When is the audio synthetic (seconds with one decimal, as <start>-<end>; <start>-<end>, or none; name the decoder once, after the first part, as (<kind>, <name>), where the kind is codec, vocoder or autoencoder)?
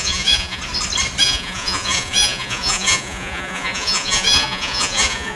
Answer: 0.0-0.6 (vocoder, Vocos); 1.2-5.4